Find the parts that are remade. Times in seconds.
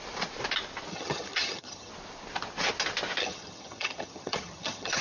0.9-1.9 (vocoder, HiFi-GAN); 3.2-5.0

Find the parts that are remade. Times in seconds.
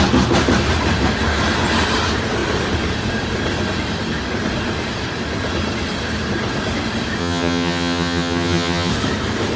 7.2-8.9 (vocoder, HiFi-GAN)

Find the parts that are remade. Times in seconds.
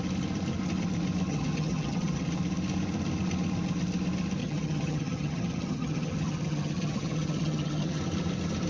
1.3-2.2 (vocoder, HiFi-GAN); 4.4-8.0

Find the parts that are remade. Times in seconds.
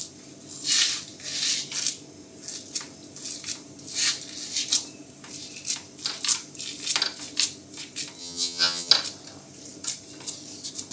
8.2-8.9 (vocoder, HiFi-GAN)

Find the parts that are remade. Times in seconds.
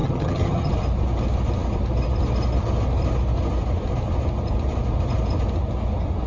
0.0-0.7 (vocoder, HiFi-GAN)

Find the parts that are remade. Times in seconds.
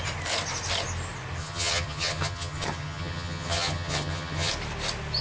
1.4-4.5 (vocoder, HiFi-GAN)